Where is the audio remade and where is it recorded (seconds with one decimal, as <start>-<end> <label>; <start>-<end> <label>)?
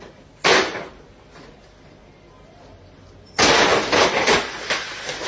0.0-5.3 recorded